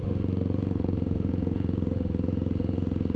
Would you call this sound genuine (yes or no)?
no